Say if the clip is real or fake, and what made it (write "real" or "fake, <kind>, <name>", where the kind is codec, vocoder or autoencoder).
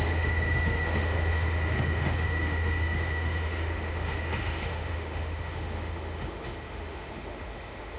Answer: fake, autoencoder, DAC-VAE